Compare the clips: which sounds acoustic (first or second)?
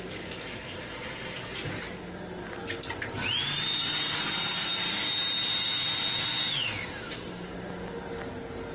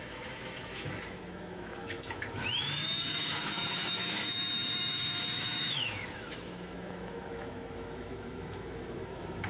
first